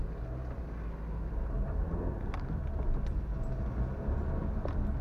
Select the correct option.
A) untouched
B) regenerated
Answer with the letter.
A